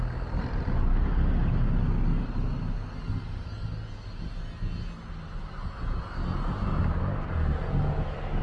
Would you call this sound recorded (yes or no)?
yes